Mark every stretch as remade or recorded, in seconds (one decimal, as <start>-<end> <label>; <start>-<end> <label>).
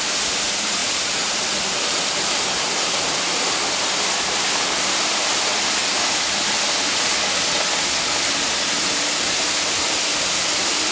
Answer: 0.0-5.8 remade; 5.8-9.2 recorded; 9.2-10.9 remade